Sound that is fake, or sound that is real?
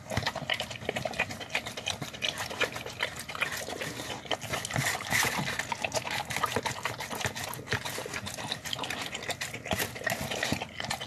real